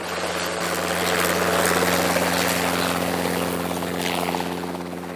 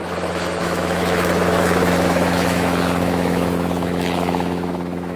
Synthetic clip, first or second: second